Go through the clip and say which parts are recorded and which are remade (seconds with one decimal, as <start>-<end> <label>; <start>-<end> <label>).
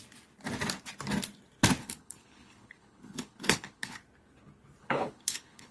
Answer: 0.0-1.8 recorded; 1.8-4.0 remade; 4.0-4.8 recorded; 4.8-5.7 remade